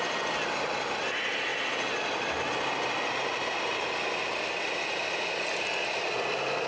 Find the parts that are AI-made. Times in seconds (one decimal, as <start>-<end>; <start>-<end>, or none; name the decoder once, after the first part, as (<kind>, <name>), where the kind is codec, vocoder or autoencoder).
none